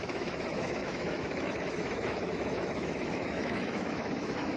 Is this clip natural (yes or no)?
no